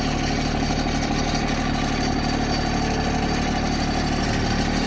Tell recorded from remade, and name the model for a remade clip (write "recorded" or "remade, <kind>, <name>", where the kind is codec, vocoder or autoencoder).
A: remade, vocoder, BigVGAN v2